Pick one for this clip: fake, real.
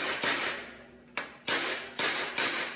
real